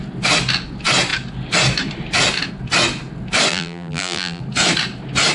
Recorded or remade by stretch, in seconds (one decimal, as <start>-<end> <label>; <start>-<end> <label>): 0.0-3.5 recorded; 3.5-4.4 remade; 4.4-5.3 recorded